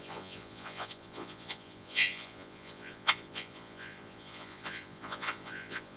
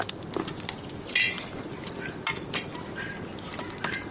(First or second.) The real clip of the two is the second